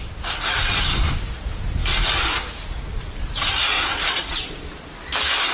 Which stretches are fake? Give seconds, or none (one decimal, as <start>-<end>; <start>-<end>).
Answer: none